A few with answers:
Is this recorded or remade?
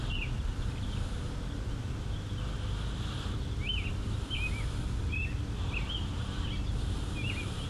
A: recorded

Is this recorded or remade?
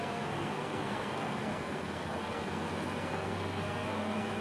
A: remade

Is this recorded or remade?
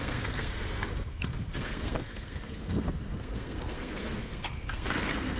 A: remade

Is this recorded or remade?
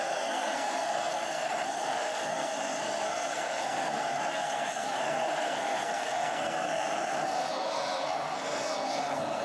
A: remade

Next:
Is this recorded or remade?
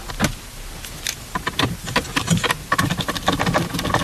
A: recorded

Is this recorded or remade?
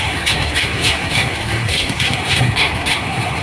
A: remade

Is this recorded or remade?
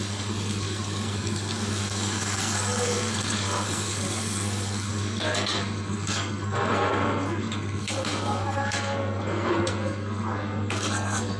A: remade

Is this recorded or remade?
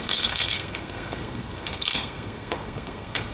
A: remade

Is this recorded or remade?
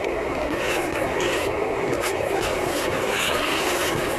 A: remade